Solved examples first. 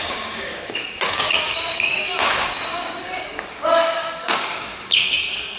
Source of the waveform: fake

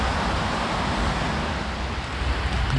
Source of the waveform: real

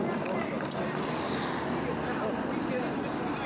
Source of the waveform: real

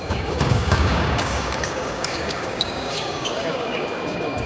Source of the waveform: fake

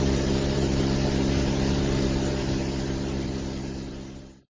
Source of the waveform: real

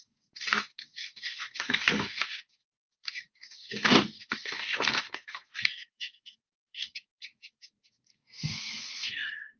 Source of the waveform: fake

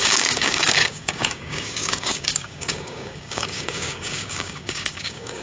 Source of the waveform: fake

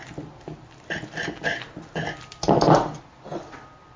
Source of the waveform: real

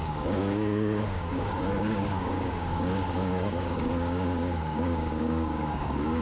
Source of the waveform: fake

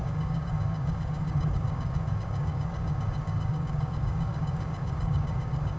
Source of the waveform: fake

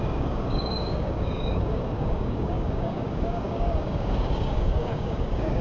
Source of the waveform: fake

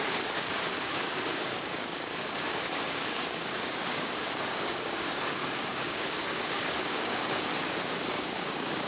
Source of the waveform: fake